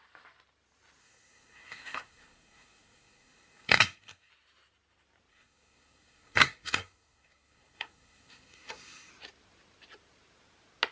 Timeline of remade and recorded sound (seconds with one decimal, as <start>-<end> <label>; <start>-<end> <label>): 0.0-1.0 recorded; 1.0-4.3 remade; 4.3-5.3 recorded; 5.3-9.1 remade; 9.1-10.9 recorded